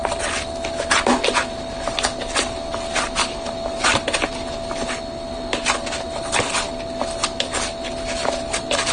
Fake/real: real